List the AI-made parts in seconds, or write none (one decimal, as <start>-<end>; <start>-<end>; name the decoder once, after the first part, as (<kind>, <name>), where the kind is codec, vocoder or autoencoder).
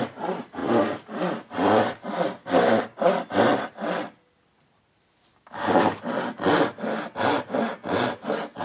2.4-3.1 (codec, DAC); 5.3-6.0